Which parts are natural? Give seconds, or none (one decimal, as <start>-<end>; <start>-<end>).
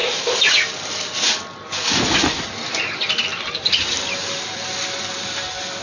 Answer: 0.0-5.8